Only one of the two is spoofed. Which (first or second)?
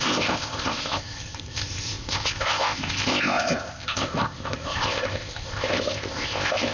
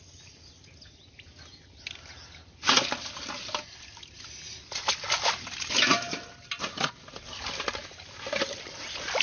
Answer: first